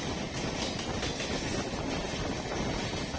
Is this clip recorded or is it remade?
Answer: recorded